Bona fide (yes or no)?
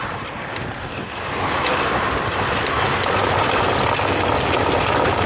yes